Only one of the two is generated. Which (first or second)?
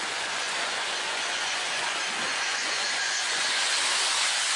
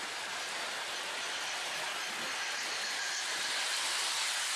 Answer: first